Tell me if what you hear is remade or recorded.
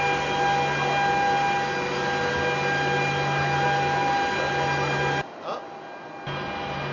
recorded